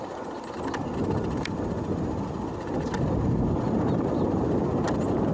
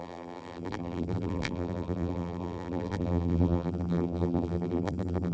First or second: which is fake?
second